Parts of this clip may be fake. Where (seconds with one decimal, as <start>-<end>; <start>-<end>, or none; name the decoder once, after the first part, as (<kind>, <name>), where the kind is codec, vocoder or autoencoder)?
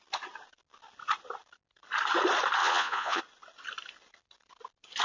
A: 2.6-3.2 (vocoder, Vocos)